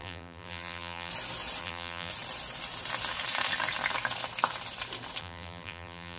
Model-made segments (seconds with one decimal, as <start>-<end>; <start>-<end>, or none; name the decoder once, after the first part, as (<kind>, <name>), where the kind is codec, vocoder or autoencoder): 0.0-1.1 (vocoder, BigVGAN v2); 1.6-2.1; 5.2-6.2